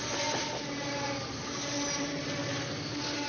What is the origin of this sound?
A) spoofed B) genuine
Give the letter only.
B